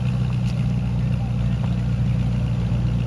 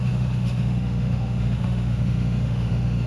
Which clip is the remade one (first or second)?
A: second